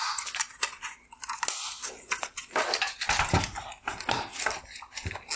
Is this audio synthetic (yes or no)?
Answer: no